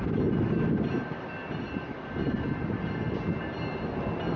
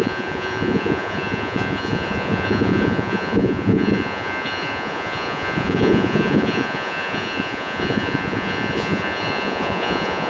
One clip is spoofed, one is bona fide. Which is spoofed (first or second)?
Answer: second